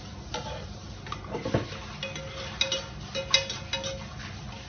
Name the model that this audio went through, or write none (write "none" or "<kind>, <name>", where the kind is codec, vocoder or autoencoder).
none